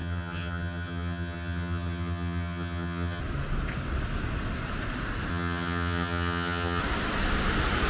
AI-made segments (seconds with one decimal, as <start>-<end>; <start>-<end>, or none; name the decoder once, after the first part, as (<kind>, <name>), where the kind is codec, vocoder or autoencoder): 0.0-3.2 (vocoder, HiFi-GAN); 5.3-6.8